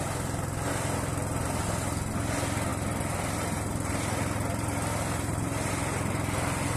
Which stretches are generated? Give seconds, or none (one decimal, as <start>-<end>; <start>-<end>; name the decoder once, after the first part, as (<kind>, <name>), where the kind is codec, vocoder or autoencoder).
2.7-5.7 (vocoder, BigVGAN v2)